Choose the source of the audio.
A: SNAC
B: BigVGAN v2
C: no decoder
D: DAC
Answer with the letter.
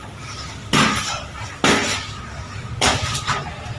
C